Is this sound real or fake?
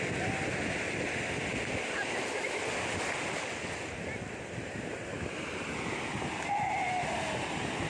real